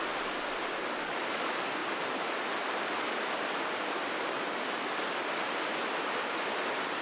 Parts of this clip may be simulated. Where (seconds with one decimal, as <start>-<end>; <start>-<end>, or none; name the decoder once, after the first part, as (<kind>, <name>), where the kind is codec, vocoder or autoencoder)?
0.8-1.4 (codec, DAC)